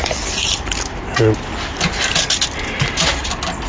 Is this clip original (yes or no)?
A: yes